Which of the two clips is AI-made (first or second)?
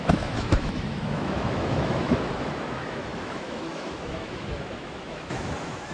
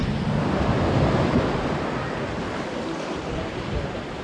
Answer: first